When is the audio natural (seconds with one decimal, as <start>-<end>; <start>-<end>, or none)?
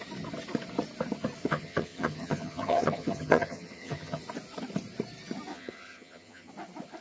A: 0.0-1.4; 4.2-5.5; 6.5-7.0